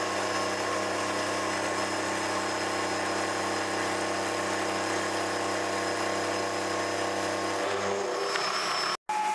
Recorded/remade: recorded